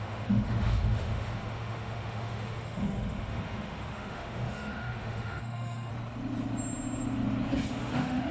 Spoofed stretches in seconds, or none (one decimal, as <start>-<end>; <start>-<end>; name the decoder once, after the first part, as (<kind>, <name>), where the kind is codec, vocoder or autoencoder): 0.0-5.9 (autoencoder, DAC-VAE); 7.7-8.3